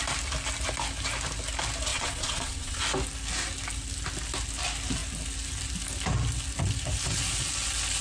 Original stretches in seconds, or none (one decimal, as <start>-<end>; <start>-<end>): 0.0-1.9; 2.8-8.0